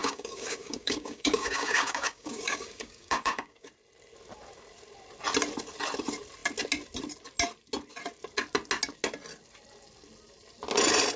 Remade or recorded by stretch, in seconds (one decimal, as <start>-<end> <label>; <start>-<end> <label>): 0.0-3.7 remade; 3.7-11.2 recorded